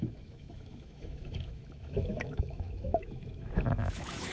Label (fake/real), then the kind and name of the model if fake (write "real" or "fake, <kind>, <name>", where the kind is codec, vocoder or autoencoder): fake, autoencoder, DAC-VAE